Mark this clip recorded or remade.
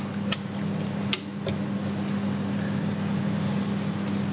recorded